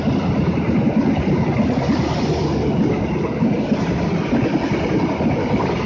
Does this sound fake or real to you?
real